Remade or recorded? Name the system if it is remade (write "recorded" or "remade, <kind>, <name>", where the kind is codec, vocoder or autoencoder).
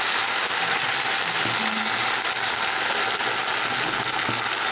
recorded